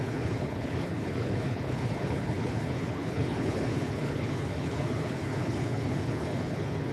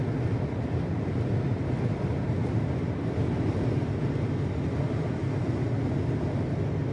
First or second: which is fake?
first